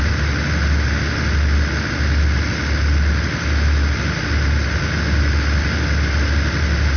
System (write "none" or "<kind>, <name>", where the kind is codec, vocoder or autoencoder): none